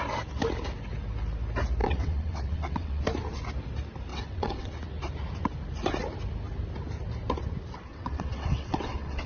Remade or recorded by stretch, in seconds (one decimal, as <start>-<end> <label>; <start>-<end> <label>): 0.0-1.8 recorded; 1.8-3.0 remade; 3.0-4.1 recorded; 4.1-4.7 remade; 4.7-7.9 recorded; 7.9-9.3 remade

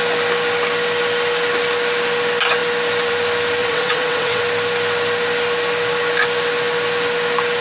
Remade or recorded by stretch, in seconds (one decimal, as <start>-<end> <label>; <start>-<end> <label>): 0.0-3.6 recorded; 3.6-4.4 remade; 4.4-7.6 recorded

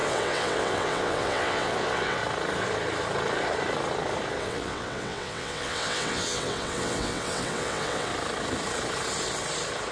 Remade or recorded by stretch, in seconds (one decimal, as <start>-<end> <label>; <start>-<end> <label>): 0.0-2.2 remade; 2.2-4.4 recorded; 4.4-8.1 remade; 8.1-9.9 recorded

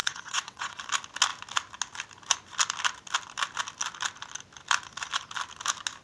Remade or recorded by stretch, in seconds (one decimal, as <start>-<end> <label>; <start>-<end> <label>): 0.0-0.8 remade; 0.8-6.0 recorded

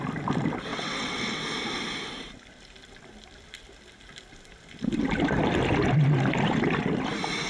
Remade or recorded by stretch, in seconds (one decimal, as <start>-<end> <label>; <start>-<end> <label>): 0.0-0.7 recorded; 0.7-1.4 remade; 1.4-7.5 recorded

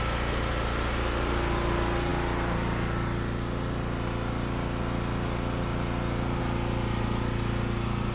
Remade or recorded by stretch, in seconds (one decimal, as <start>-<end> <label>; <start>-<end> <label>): 0.0-8.1 recorded

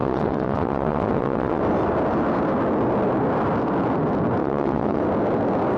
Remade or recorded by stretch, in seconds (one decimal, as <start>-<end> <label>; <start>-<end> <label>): 0.0-1.6 remade; 1.6-4.4 recorded; 4.4-5.0 remade; 5.0-5.8 recorded

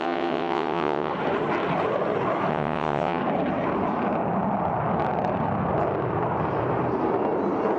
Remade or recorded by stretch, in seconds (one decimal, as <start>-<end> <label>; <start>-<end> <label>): 0.0-1.1 remade; 1.1-2.5 recorded; 2.5-3.2 remade; 3.2-7.8 recorded